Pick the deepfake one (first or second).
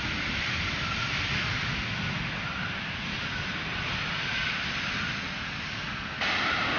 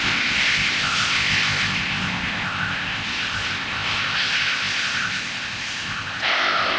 second